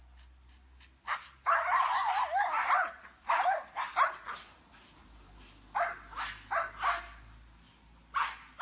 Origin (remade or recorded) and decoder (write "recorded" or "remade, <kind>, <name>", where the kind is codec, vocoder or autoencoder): recorded